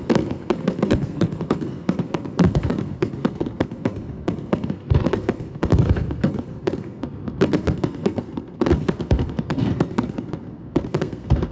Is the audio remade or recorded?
remade